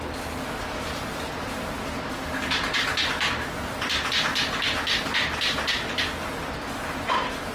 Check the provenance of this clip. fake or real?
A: real